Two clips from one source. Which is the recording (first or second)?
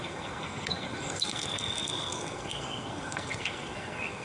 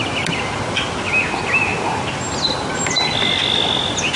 second